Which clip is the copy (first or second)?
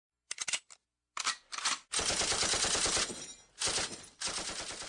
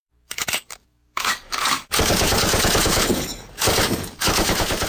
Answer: second